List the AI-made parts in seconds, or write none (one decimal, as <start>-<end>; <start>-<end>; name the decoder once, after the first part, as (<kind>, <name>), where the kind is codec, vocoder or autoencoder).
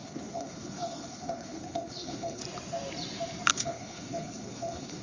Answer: 0.0-2.4 (codec, HILCodec); 3.5-5.0